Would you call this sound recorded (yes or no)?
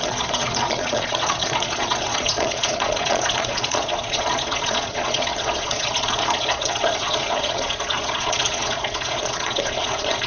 no